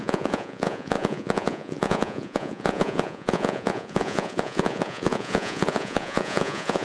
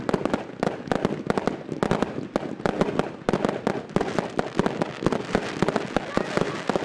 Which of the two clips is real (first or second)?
second